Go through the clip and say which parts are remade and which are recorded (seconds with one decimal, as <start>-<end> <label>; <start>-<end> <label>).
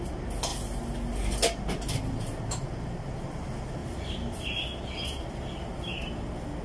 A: 0.0-6.6 recorded